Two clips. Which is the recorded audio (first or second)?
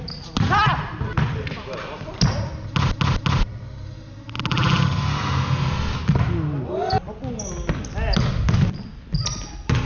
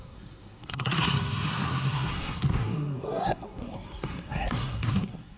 first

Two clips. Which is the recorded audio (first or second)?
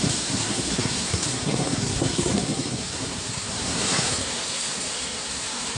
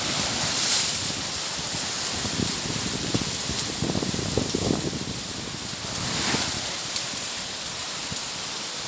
second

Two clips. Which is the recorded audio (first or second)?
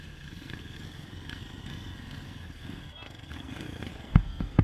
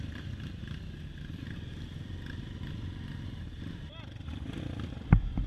second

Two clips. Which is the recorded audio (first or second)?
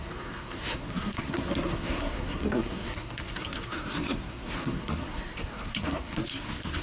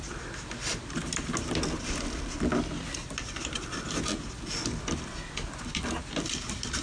second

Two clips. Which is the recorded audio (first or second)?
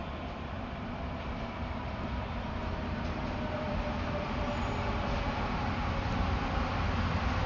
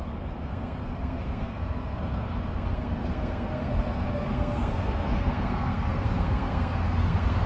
first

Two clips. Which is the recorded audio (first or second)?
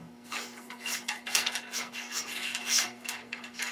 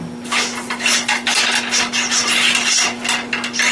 second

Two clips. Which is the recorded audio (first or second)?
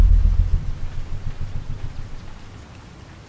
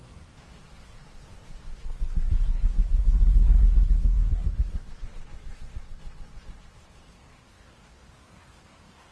first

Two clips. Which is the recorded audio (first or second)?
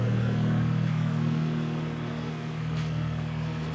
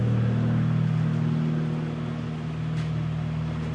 second